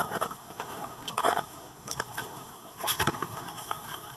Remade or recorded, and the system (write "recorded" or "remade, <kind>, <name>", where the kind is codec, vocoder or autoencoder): remade, codec, SNAC